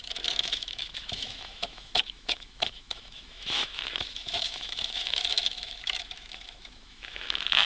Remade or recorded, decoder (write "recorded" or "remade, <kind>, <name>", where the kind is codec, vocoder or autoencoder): remade, autoencoder, DAC-VAE